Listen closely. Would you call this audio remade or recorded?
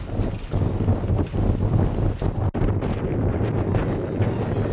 recorded